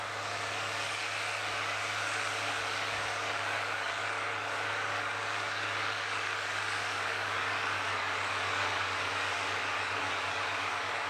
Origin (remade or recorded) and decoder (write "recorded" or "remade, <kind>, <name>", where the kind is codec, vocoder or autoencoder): remade, codec, DAC